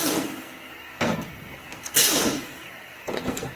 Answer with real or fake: fake